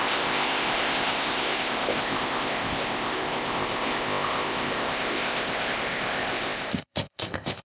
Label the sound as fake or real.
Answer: fake